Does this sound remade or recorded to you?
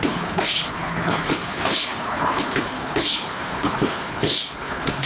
remade